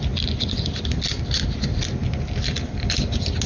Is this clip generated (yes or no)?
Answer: no